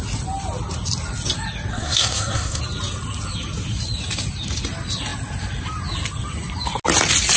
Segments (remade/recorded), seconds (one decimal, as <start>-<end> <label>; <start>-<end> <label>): 0.0-1.7 recorded; 1.7-2.6 remade; 2.6-7.4 recorded